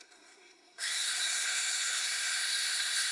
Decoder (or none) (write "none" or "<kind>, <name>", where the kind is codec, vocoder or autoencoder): codec, SNAC